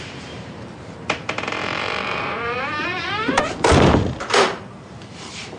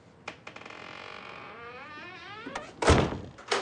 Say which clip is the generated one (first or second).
first